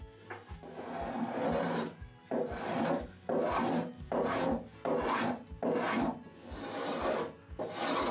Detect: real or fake real